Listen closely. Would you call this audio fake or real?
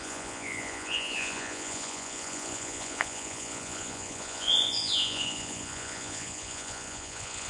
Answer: fake